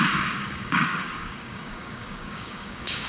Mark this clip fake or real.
fake